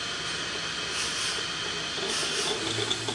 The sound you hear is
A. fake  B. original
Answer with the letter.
B